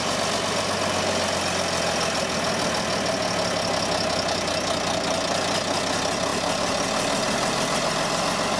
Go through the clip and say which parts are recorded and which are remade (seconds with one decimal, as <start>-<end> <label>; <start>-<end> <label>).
0.0-8.6 recorded